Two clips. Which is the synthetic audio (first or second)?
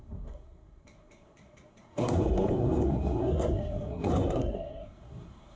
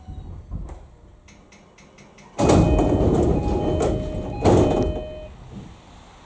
first